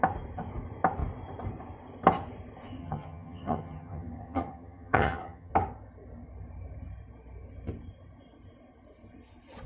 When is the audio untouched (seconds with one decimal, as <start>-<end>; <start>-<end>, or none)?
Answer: 0.0-2.8; 5.5-9.7